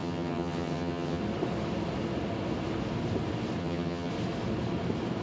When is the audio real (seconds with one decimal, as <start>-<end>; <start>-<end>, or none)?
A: 1.2-3.6; 4.1-5.2